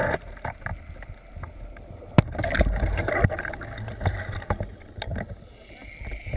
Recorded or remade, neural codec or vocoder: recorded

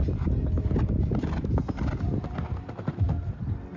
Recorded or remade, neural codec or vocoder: recorded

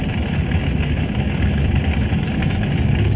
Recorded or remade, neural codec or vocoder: recorded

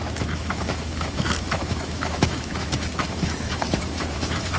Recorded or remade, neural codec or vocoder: remade, autoencoder, DAC-VAE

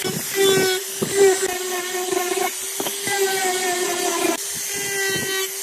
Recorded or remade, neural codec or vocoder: recorded